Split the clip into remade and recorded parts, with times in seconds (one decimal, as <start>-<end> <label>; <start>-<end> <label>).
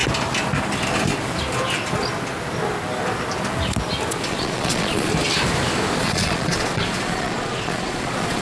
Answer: 0.0-4.3 recorded; 4.3-5.1 remade; 5.1-6.0 recorded; 6.0-8.4 remade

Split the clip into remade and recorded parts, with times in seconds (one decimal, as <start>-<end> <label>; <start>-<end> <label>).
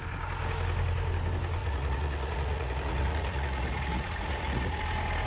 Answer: 0.0-1.6 recorded; 1.6-4.8 remade; 4.8-5.3 recorded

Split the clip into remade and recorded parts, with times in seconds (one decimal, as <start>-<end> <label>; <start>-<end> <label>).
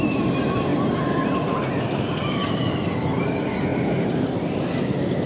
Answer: 0.0-5.3 recorded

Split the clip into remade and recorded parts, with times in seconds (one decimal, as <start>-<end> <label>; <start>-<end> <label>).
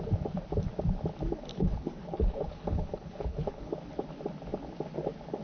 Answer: 0.0-1.5 recorded; 1.5-3.7 remade; 3.7-5.4 recorded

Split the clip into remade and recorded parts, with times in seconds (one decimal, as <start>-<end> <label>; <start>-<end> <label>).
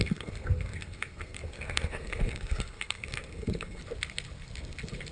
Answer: 0.0-3.8 remade; 3.8-5.1 recorded